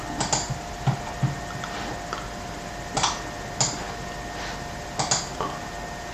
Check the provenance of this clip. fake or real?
real